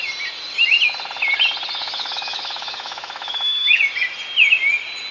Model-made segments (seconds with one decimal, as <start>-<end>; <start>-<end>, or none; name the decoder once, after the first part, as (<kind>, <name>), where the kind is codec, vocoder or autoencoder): 1.8-3.8 (autoencoder, DAC-VAE)